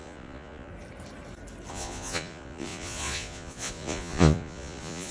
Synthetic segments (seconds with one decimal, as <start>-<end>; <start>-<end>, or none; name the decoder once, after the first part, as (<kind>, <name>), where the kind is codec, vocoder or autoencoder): 0.0-0.7 (vocoder, Vocos); 1.7-5.1